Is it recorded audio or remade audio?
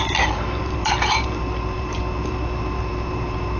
remade